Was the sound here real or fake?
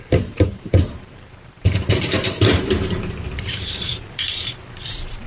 fake